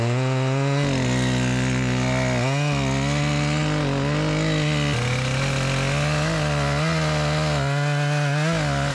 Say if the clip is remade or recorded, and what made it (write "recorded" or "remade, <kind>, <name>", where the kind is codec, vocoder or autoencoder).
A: recorded